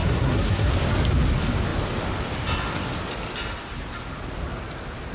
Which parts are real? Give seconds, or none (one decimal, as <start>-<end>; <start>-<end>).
0.7-5.1